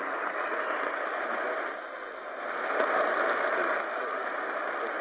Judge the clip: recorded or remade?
remade